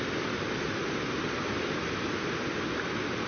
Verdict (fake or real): real